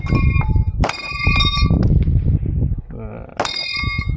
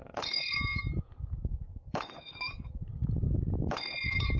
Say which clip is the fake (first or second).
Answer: second